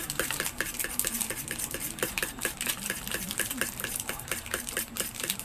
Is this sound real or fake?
fake